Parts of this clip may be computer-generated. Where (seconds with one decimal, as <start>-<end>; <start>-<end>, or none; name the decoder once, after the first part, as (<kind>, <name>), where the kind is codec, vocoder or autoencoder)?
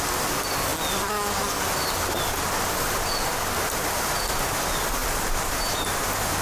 5.0-6.0 (vocoder, BigVGAN v2)